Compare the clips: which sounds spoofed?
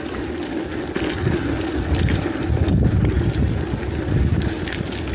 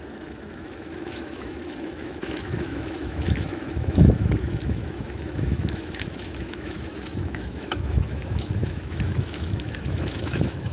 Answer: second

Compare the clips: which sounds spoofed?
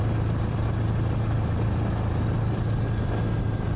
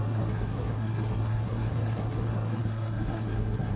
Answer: second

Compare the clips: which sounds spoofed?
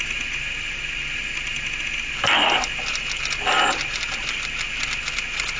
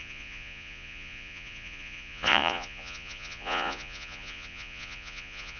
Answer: second